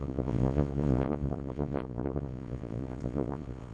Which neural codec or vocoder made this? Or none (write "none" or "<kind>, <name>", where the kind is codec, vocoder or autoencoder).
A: vocoder, Vocos